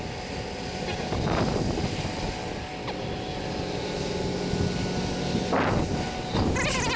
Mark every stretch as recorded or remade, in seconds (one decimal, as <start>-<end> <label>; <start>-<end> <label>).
0.0-7.0 recorded